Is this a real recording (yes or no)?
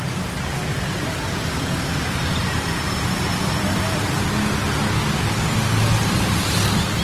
yes